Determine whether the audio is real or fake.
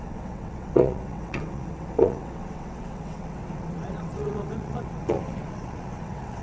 fake